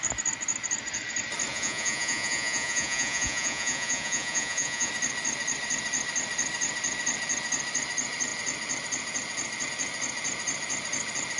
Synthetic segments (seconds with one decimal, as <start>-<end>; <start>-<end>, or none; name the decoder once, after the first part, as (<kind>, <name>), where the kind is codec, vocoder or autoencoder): 1.5-4.9 (vocoder, Vocos)